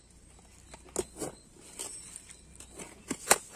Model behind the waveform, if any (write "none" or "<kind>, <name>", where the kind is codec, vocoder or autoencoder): none